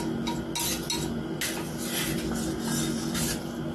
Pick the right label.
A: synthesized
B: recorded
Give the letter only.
B